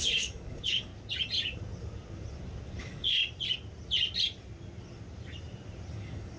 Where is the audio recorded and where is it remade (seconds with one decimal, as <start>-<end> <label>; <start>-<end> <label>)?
0.0-0.9 remade; 0.9-2.8 recorded; 2.8-3.2 remade; 3.2-5.9 recorded; 5.9-6.4 remade